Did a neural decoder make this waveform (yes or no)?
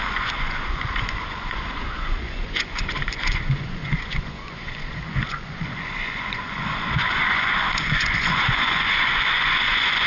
yes